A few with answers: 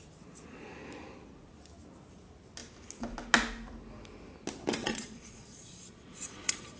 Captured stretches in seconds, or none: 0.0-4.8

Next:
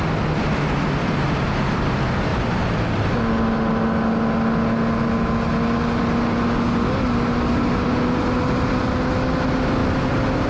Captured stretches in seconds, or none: 0.0-2.3; 3.1-9.8

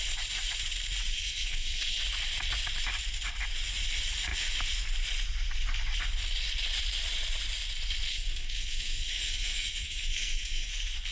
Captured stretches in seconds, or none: 0.0-1.1; 2.0-8.1; 10.7-11.1

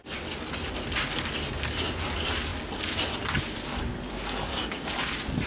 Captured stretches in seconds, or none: 0.0-5.5

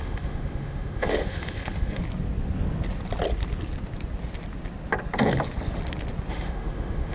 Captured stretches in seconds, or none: 2.0-6.3

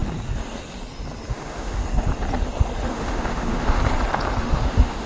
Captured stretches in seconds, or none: 0.0-1.3; 1.8-2.9; 3.8-4.4

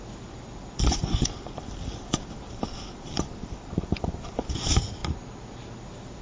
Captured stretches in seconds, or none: 5.0-5.8